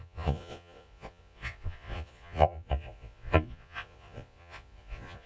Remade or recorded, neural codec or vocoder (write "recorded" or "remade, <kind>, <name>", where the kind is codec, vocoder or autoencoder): remade, vocoder, Vocos